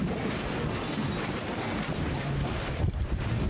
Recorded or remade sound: recorded